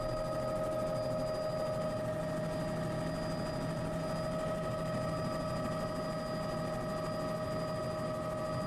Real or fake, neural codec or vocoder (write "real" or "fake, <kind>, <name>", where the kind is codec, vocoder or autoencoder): real